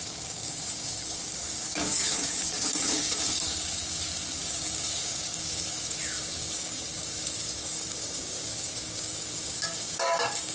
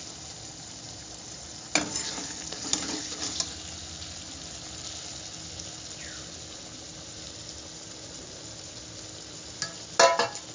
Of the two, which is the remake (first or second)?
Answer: first